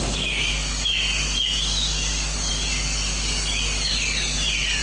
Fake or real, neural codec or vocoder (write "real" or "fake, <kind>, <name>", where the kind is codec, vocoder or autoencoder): fake, codec, DAC